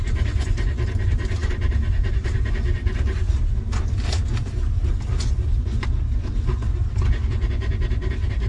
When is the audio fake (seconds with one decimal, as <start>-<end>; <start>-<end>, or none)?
none